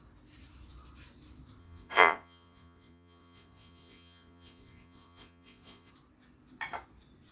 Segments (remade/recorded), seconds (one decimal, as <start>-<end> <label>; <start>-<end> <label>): 0.0-1.6 recorded; 1.6-5.9 remade; 5.9-7.3 recorded